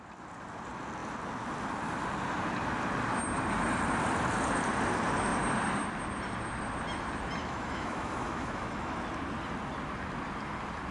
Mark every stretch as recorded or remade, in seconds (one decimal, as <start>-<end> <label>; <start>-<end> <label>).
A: 0.0-7.4 recorded; 7.4-9.0 remade; 9.0-10.9 recorded